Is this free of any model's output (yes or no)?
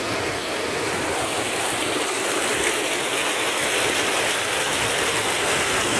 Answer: yes